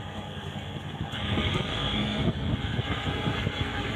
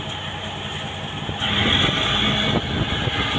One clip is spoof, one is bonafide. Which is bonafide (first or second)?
second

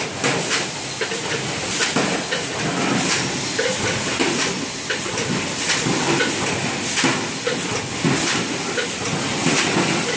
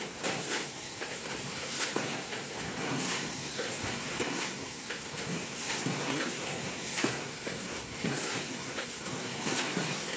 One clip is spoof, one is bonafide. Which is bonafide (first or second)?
first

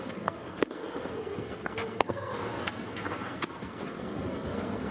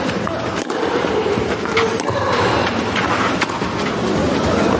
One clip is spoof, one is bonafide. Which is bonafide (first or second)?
second